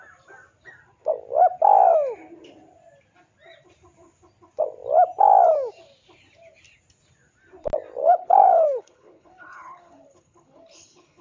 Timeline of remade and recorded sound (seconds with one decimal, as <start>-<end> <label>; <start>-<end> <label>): 0.0-8.0 recorded; 8.0-11.2 remade